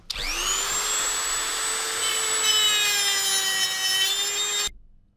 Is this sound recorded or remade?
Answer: recorded